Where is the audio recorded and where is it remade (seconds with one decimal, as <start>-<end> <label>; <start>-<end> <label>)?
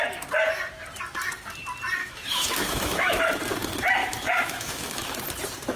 0.0-2.0 recorded; 2.0-3.2 remade; 3.2-4.0 recorded; 4.0-5.1 remade; 5.1-5.8 recorded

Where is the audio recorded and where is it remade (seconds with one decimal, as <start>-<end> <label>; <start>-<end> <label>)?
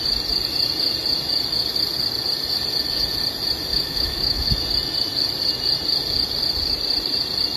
0.0-3.7 recorded; 3.7-4.5 remade; 4.5-7.6 recorded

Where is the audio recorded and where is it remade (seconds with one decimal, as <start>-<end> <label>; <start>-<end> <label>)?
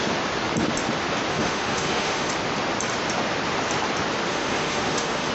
0.0-1.3 recorded; 1.3-2.3 remade; 2.3-4.3 recorded; 4.3-5.3 remade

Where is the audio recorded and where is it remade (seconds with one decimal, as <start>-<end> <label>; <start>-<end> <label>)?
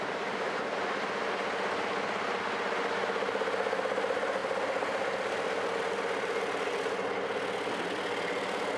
0.0-8.8 recorded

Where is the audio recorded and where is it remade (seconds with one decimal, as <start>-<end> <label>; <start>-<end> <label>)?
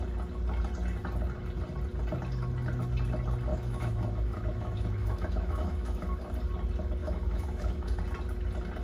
0.0-3.5 recorded; 3.5-6.2 remade; 6.2-7.0 recorded; 7.0-8.0 remade; 8.0-8.8 recorded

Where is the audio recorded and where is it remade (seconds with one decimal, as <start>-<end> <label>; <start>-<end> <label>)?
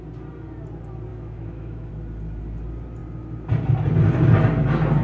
0.0-1.1 recorded; 1.1-1.9 remade; 1.9-5.0 recorded